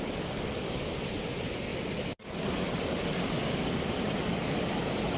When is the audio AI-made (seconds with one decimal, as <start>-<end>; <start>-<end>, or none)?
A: none